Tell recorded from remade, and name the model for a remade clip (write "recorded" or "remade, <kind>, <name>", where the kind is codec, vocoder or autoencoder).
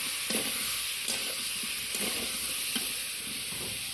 recorded